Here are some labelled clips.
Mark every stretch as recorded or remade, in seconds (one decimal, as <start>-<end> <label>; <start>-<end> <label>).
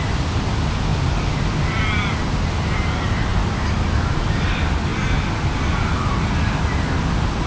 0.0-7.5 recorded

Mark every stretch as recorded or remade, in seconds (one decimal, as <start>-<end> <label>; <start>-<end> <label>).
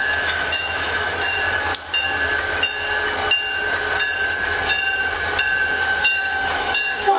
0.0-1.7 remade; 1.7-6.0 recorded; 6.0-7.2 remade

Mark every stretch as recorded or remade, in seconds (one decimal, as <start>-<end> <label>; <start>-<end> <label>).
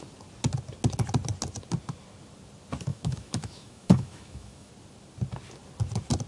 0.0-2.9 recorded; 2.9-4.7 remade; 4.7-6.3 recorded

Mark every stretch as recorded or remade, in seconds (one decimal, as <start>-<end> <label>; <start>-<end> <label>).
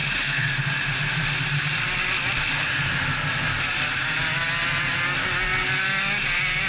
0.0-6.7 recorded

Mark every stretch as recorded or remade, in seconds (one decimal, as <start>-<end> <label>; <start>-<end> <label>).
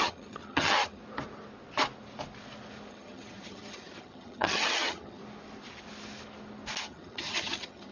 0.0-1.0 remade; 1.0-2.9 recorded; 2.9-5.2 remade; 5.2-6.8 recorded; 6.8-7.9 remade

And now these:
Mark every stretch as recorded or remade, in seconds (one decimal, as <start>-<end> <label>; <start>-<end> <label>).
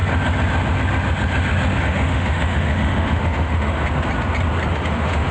0.0-1.8 recorded; 1.8-3.8 remade; 3.8-4.7 recorded; 4.7-5.3 remade